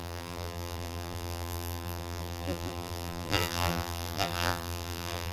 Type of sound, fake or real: fake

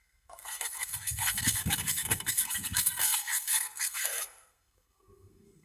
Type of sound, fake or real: fake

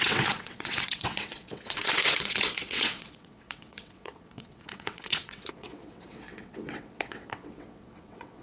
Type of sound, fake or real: fake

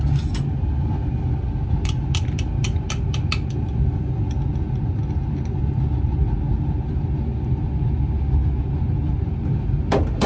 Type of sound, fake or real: real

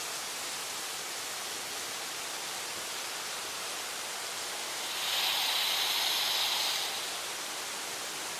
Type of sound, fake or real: real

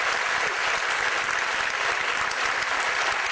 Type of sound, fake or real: real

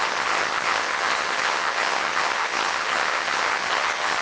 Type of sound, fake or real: fake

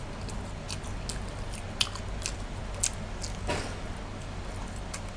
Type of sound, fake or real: real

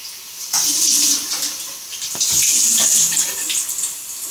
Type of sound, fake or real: real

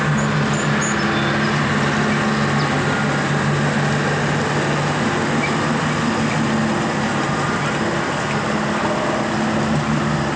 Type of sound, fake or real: real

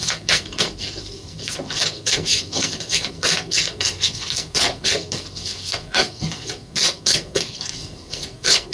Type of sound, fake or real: fake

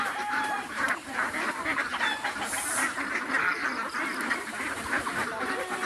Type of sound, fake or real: fake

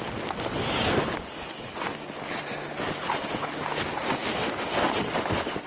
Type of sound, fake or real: real